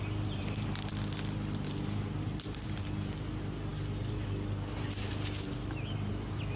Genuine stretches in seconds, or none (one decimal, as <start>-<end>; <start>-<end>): 0.0-6.6